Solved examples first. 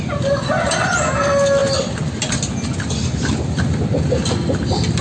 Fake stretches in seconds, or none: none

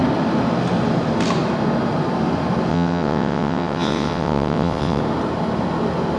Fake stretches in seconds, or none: 2.7-5.0 (vocoder, WaveNeXt)